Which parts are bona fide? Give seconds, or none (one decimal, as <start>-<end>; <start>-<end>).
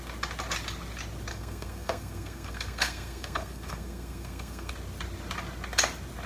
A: 0.0-1.3; 4.7-6.3